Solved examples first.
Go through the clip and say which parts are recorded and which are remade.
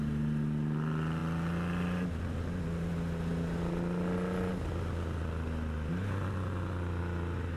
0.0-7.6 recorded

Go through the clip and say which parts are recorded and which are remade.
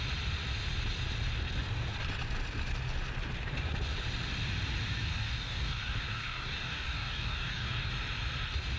0.0-5.1 recorded; 5.1-7.9 remade; 7.9-8.8 recorded